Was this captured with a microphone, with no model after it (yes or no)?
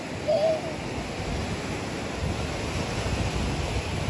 yes